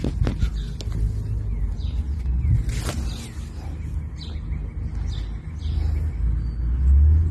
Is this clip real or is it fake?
real